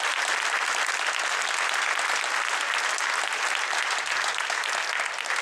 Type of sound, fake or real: real